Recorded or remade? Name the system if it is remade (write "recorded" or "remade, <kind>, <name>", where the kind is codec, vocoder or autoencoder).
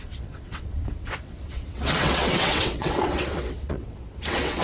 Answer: remade, vocoder, WaveNeXt